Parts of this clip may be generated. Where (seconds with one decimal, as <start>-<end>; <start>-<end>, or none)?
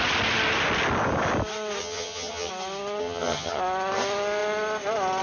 1.8-2.5; 3.0-3.6